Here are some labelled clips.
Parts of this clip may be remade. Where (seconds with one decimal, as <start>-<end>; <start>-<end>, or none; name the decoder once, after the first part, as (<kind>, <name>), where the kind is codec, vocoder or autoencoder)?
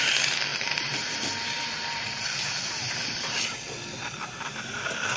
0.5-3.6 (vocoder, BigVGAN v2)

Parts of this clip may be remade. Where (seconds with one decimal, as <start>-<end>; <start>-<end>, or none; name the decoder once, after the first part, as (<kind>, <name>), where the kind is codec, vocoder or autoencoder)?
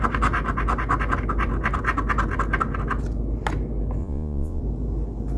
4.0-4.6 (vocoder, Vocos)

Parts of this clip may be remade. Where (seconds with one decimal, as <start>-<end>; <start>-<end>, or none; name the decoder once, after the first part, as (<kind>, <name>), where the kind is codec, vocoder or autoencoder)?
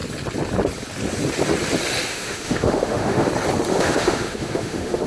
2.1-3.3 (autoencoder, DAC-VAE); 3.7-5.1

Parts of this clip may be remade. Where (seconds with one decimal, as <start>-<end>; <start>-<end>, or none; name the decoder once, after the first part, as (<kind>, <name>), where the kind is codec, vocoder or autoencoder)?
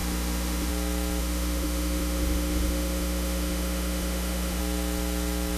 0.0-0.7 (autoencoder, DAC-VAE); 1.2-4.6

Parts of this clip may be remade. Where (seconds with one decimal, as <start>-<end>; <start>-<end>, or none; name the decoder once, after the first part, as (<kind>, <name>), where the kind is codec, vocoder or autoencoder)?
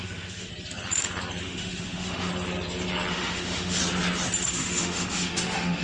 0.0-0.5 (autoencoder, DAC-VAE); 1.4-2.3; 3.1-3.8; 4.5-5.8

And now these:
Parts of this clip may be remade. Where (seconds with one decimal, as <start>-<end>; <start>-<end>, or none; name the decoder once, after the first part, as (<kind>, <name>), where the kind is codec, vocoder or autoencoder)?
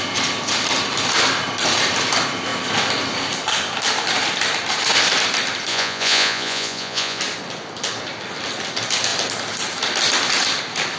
5.7-7.2 (vocoder, Vocos)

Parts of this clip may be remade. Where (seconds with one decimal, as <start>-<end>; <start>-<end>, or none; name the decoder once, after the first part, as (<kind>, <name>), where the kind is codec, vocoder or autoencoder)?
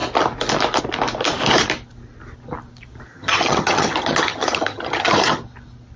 3.1-5.4 (vocoder, HiFi-GAN)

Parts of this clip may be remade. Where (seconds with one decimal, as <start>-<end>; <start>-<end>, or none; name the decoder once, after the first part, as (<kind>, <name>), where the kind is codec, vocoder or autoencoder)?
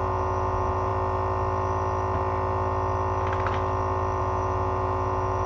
0.0-0.9 (vocoder, Vocos); 4.2-5.5